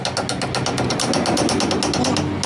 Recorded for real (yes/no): yes